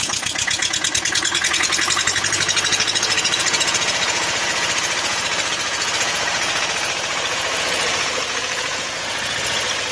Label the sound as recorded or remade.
remade